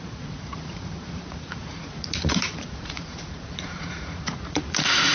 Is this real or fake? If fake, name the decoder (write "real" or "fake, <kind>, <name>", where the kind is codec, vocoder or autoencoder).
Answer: fake, vocoder, Vocos